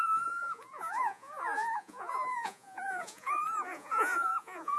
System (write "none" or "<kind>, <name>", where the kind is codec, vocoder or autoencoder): vocoder, Vocos